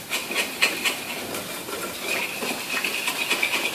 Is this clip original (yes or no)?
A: yes